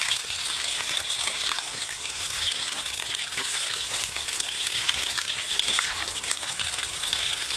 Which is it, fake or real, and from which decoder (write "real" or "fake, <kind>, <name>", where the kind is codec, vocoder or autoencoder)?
fake, codec, SNAC